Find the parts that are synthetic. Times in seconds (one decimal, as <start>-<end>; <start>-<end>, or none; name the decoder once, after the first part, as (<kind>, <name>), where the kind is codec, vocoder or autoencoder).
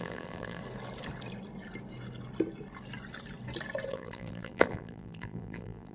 0.0-0.6 (vocoder, BigVGAN v2); 3.9-5.9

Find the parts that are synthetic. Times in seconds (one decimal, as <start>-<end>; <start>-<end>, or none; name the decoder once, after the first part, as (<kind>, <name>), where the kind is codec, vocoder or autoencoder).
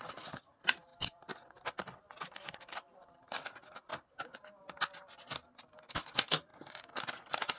none